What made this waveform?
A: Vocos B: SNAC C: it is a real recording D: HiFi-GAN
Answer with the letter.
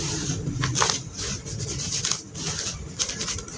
C